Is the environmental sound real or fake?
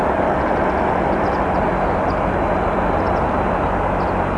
real